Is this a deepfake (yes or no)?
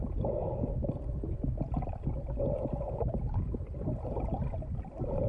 no